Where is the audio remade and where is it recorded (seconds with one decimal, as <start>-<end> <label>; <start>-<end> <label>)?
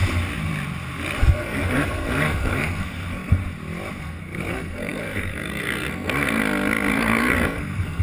0.0-1.2 recorded; 1.2-3.4 remade; 3.4-4.0 recorded; 4.0-6.4 remade; 6.4-6.9 recorded; 6.9-8.0 remade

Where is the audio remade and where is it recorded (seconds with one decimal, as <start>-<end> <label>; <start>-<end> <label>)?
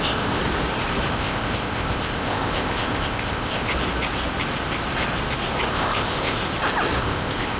0.0-0.4 remade; 0.4-1.1 recorded; 1.1-3.7 remade; 3.7-5.7 recorded; 5.7-6.4 remade; 6.4-7.0 recorded; 7.0-7.6 remade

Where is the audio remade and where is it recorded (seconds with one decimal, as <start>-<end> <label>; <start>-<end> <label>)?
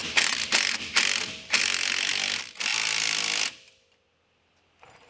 0.0-5.1 recorded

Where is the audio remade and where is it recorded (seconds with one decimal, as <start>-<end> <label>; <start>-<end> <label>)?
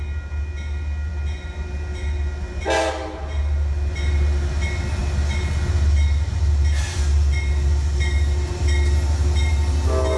0.0-10.2 recorded